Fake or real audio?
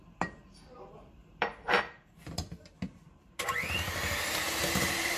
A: fake